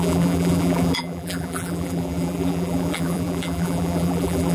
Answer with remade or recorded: remade